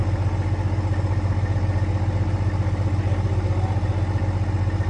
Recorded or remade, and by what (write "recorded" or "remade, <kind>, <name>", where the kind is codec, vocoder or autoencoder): recorded